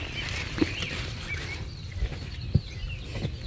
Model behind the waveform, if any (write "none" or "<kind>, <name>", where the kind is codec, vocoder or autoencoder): none